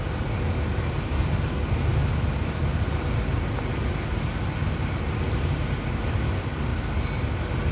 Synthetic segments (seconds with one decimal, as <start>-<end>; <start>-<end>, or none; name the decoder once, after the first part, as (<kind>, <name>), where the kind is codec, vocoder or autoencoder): none